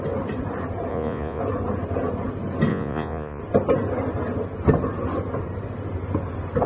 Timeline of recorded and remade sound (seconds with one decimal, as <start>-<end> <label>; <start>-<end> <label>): 0.0-0.9 recorded; 0.9-1.4 remade; 1.4-2.7 recorded; 2.7-3.4 remade; 3.4-6.7 recorded